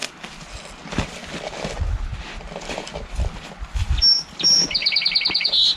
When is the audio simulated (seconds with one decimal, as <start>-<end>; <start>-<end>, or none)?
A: 4.8-5.8